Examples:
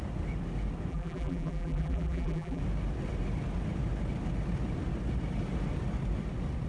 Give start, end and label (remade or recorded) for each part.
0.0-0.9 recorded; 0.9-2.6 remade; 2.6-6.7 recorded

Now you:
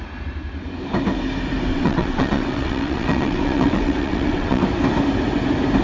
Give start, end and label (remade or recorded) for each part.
0.0-1.7 recorded; 1.7-4.6 remade; 4.6-5.8 recorded